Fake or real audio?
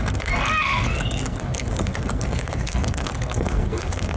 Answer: fake